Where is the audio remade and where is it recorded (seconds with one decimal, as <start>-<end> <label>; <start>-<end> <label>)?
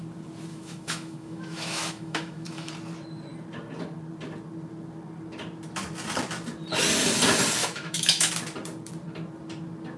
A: 0.0-0.5 recorded; 0.5-2.7 remade; 2.7-7.6 recorded; 7.6-8.3 remade; 8.3-10.0 recorded